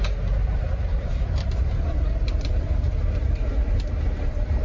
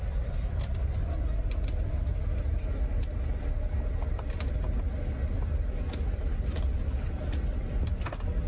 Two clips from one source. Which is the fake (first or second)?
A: first